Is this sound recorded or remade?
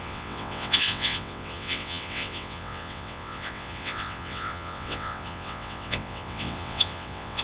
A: remade